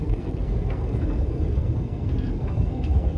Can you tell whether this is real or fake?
fake